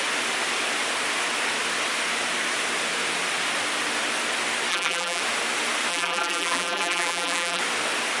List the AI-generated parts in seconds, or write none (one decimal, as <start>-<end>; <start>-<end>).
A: 4.7-5.2; 5.9-7.6